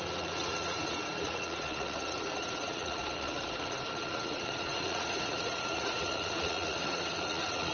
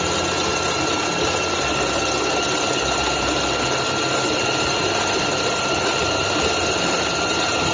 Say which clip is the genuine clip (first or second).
second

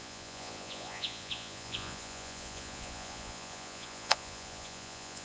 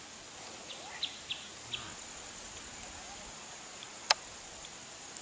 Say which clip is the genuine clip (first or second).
second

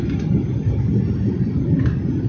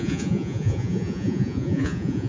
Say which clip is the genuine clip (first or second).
first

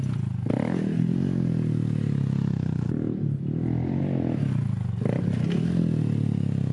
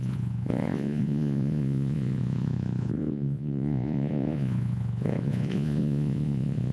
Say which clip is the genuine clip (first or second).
first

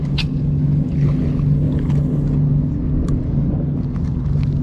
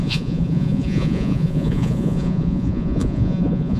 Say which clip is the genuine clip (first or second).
first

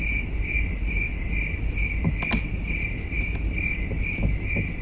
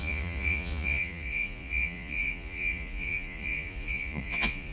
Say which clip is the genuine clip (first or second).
first